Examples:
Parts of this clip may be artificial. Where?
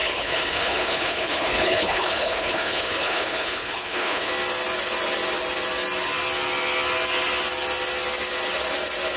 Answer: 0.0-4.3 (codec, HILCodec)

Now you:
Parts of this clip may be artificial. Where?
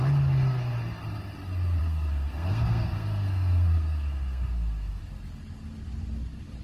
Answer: 1.8-5.0 (codec, SNAC)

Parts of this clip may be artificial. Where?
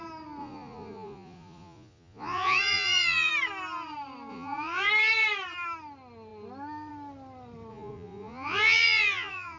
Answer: 0.4-3.3 (vocoder, Vocos); 4.3-4.9; 7.7-9.6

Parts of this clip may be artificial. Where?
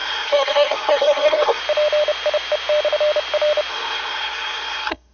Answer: 0.0-1.6 (codec, SNAC); 3.7-5.1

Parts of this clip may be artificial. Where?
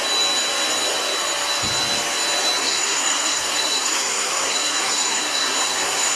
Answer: 2.6-6.2 (codec, SNAC)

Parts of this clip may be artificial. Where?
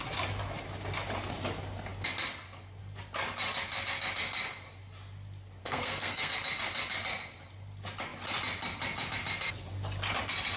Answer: 5.6-6.3 (codec, SNAC)